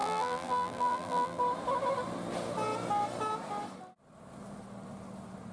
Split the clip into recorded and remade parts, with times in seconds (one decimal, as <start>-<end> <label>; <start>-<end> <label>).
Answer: 0.0-1.4 remade; 1.4-5.5 recorded